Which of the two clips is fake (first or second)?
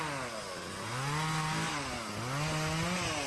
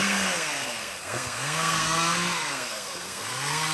second